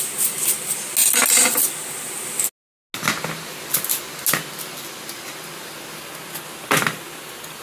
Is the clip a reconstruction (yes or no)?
no